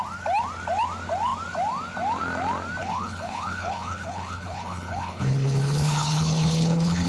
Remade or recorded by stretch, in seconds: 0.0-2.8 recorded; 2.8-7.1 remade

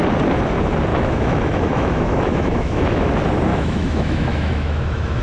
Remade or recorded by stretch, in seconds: 0.0-0.9 recorded; 0.9-3.1 remade; 3.1-3.5 recorded; 3.5-5.2 remade

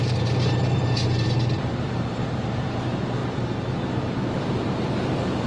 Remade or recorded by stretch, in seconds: 0.0-5.5 remade

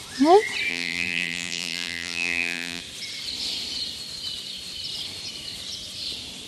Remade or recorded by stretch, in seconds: 0.0-0.7 recorded; 0.7-2.8 remade; 2.8-6.5 recorded

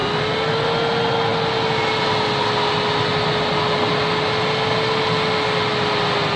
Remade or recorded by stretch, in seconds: 0.0-6.4 recorded

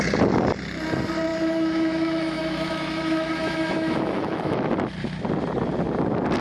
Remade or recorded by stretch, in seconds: 0.0-1.3 recorded; 1.3-4.7 remade; 4.7-6.4 recorded

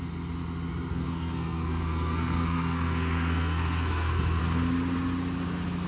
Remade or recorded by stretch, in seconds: 0.0-0.9 recorded; 0.9-4.4 remade; 4.4-5.9 recorded

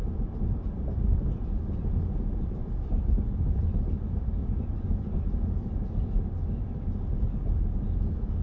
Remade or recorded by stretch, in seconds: 0.0-4.4 recorded; 4.4-6.0 remade; 6.0-8.4 recorded